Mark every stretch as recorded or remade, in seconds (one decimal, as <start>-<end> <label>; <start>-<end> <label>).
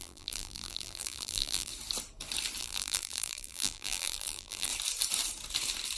0.0-1.7 remade; 1.7-2.6 recorded; 2.6-4.7 remade; 4.7-6.0 recorded